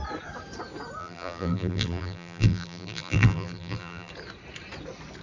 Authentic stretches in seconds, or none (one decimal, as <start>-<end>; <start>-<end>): 0.0-1.0; 4.1-5.2